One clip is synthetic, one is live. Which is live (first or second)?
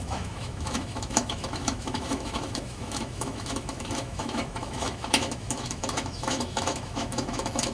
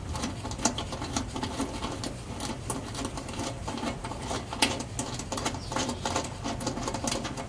second